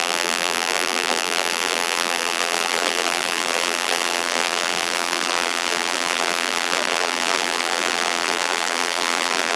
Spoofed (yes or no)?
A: yes